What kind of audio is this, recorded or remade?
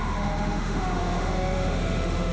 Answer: remade